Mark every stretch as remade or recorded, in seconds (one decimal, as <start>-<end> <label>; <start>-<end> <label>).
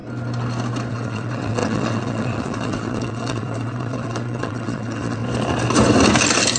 0.0-0.9 recorded; 0.9-5.2 remade; 5.2-6.6 recorded